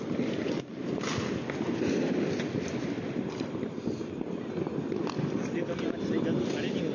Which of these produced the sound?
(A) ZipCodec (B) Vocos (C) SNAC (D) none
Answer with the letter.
D